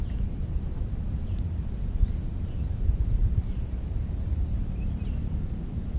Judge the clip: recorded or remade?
remade